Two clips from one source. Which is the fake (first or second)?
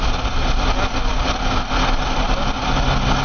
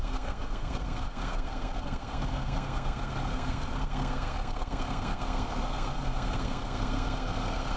second